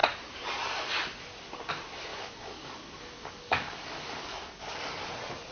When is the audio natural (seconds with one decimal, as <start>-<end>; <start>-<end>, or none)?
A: 0.0-2.1; 4.6-5.5